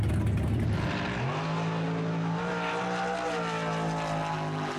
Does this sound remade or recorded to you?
recorded